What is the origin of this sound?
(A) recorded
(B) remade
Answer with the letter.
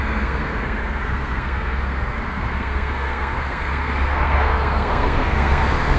B